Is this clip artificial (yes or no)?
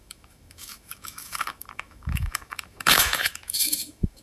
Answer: yes